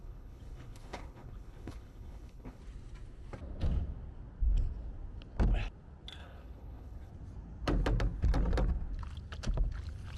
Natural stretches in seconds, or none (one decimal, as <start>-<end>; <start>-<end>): 2.6-6.2; 7.1-10.2